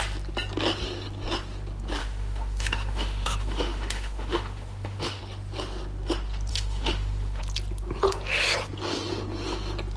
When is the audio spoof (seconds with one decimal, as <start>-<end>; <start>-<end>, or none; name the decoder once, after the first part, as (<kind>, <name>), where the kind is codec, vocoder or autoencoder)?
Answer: 2.0-5.2 (autoencoder, DAC-VAE); 6.5-7.4